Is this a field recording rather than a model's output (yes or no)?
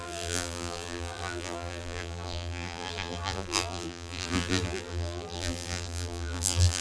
no